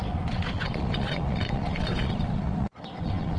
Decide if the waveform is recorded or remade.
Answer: remade